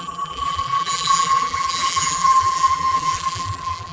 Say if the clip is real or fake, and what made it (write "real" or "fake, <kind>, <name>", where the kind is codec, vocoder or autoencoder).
fake, vocoder, BigVGAN v2